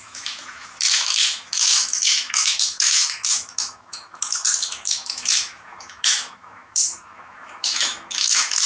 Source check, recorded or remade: remade